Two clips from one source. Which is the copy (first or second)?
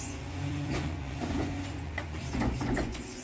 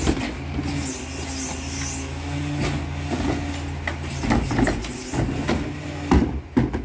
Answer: first